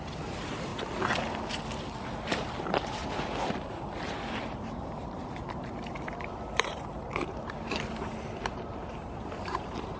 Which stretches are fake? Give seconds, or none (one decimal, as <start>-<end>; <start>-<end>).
0.0-0.7; 2.6-3.0; 4.4-10.0